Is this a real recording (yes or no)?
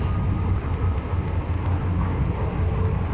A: yes